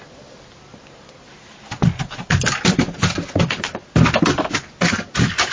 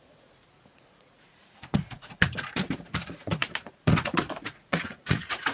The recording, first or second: first